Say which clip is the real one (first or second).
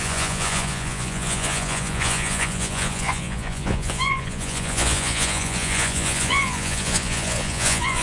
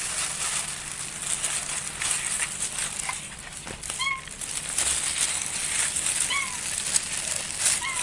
second